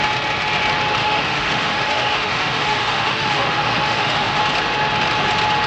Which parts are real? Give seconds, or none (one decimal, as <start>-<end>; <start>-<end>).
0.0-1.0; 4.4-5.7